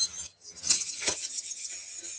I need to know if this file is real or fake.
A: fake